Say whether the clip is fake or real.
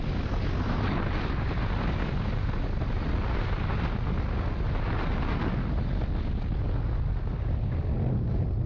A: real